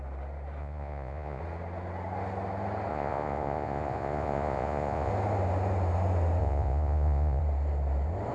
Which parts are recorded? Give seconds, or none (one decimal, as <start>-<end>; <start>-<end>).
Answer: 0.0-0.6; 1.4-2.9; 5.1-6.4; 7.4-8.3